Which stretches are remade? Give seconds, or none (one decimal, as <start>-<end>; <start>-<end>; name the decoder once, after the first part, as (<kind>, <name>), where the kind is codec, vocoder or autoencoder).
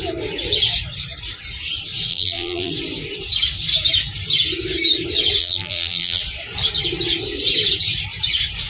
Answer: 2.1-2.7 (vocoder, BigVGAN v2); 5.4-6.2